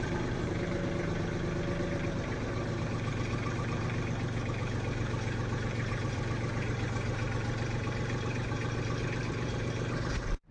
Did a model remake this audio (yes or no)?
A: yes